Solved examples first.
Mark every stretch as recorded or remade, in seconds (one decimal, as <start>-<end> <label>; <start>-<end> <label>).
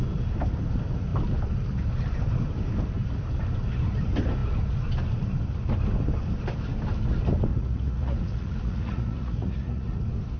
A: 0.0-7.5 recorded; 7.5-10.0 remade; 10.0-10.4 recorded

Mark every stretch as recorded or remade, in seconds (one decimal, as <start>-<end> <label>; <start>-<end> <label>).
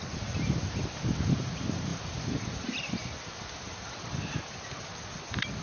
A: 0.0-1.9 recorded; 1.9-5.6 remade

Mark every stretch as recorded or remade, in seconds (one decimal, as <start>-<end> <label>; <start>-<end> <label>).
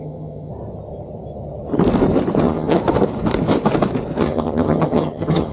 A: 0.0-0.5 remade; 0.5-2.4 recorded; 2.4-2.8 remade; 2.8-4.2 recorded; 4.2-5.5 remade